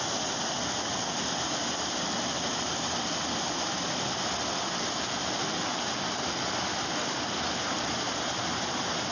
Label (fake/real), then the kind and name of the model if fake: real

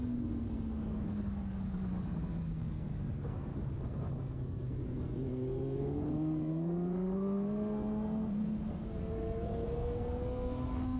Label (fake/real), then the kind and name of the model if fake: fake, codec, SNAC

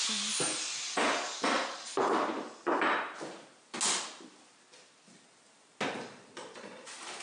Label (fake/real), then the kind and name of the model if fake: real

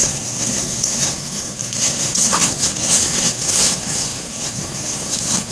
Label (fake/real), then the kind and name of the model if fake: fake, codec, SNAC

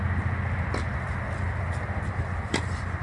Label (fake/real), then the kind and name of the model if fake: real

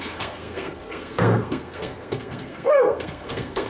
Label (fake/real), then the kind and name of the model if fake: fake, codec, SNAC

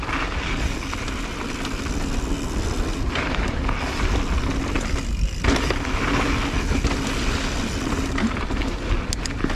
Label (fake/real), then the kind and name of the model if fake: real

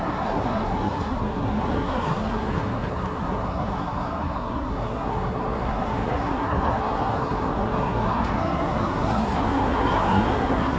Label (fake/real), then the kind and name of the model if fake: fake, codec, SNAC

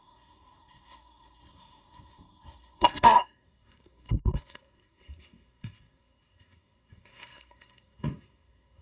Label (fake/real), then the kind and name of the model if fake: fake, codec, SNAC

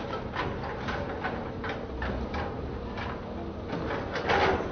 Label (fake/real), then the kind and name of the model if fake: real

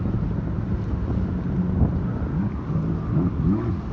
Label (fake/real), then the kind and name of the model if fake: real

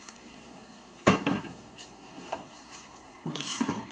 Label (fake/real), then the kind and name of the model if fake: fake, codec, SNAC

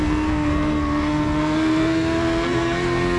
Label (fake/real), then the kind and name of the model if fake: fake, codec, SNAC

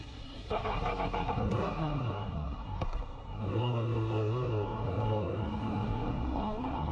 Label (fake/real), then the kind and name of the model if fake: fake, codec, SNAC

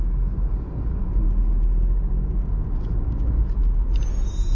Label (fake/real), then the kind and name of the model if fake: real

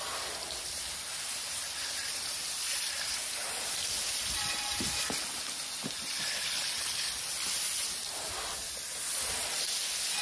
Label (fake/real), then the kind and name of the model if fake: real